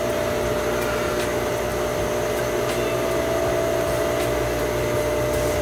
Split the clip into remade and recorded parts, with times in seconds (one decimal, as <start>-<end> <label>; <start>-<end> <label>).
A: 0.0-5.6 recorded